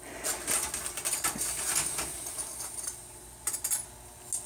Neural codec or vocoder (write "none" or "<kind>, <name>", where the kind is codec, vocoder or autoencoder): none